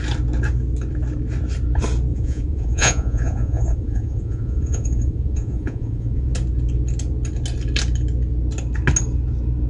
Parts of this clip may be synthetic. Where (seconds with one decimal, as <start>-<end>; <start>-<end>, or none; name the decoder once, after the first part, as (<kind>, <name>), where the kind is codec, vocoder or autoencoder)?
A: 2.1-6.3 (vocoder, Vocos)